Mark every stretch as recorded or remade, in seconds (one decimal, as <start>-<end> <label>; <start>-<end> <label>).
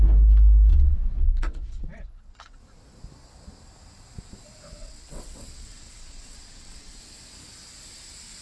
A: 0.0-0.7 recorded; 0.7-2.6 remade; 2.6-4.8 recorded; 4.8-7.0 remade; 7.0-8.4 recorded